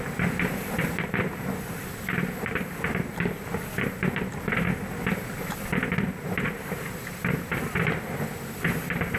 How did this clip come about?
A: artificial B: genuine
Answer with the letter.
B